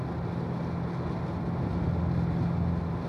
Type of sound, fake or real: real